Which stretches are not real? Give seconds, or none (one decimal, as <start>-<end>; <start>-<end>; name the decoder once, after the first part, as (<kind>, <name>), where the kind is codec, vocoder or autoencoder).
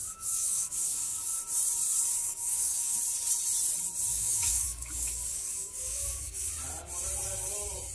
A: 0.0-1.4 (codec, DAC); 2.2-3.0; 4.1-6.5